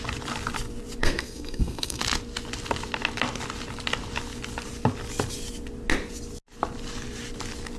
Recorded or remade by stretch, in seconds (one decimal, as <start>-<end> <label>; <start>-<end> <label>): 0.0-1.0 recorded; 1.0-2.0 remade; 2.0-7.8 recorded